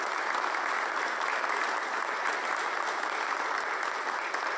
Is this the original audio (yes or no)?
yes